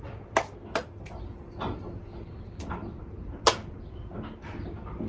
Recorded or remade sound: recorded